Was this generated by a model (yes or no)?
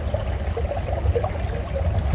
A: no